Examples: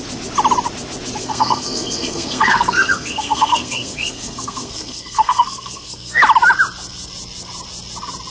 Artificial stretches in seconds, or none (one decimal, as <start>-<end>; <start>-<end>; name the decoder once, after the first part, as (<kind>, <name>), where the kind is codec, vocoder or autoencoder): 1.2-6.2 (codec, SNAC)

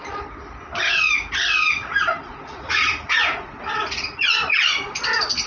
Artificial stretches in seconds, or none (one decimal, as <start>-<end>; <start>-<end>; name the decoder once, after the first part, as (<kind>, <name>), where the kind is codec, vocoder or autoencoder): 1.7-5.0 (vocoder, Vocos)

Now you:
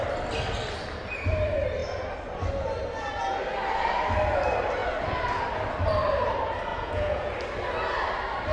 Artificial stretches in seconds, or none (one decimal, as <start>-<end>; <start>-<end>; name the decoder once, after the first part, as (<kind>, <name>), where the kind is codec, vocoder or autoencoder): 6.7-7.3 (vocoder, Vocos)

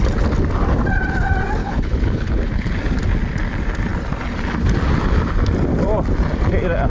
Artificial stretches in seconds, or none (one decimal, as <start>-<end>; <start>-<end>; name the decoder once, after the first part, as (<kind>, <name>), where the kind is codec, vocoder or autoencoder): 1.6-2.8 (codec, HILCodec)

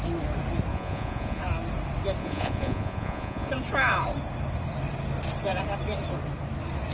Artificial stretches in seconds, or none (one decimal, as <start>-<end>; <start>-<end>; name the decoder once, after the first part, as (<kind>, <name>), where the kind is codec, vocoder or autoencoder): 0.7-1.4 (vocoder, Vocos); 2.2-3.5